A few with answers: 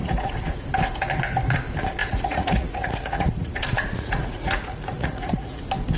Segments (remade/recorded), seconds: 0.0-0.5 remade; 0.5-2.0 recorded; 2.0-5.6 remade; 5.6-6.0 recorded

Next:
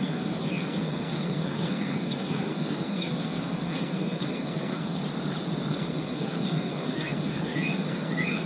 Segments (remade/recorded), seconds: 0.0-5.0 remade; 5.0-5.7 recorded; 5.7-8.5 remade

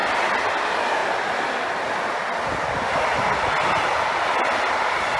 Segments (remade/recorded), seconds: 0.0-5.2 recorded

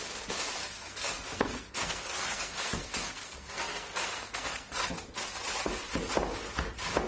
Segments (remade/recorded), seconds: 0.0-0.6 recorded; 0.6-4.9 remade; 4.9-7.1 recorded